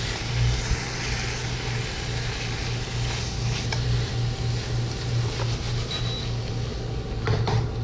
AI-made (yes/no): no